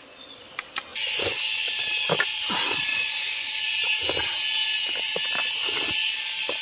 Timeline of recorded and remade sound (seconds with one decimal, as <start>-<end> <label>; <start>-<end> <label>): 0.0-0.9 recorded; 0.9-1.7 remade; 1.7-2.9 recorded; 2.9-3.6 remade; 3.6-6.6 recorded